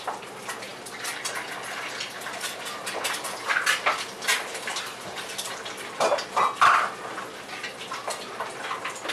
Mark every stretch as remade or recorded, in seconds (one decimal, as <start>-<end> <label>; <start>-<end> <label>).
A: 0.0-9.1 recorded